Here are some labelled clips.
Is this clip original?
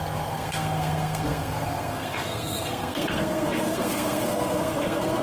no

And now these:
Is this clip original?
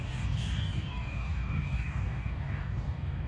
no